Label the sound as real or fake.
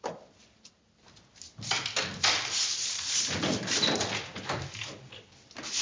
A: real